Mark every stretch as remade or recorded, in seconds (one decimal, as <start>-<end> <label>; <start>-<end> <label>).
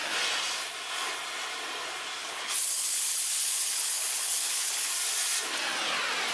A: 0.0-2.2 recorded; 2.2-4.9 remade; 4.9-6.3 recorded